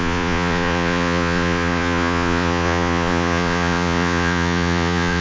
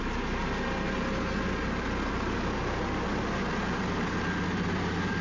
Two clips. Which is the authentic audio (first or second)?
second